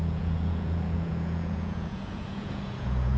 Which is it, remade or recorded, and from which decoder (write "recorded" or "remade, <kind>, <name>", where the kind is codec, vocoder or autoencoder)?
remade, vocoder, Vocos